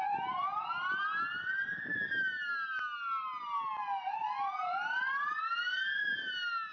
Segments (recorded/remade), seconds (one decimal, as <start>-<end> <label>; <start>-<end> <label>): 0.0-6.7 recorded